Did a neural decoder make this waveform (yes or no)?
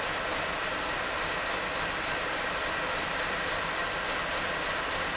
no